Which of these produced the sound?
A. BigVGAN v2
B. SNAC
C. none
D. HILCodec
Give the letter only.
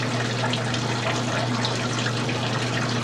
C